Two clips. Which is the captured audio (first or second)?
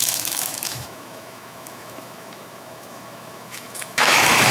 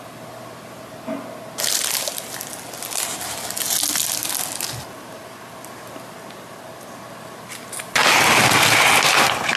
second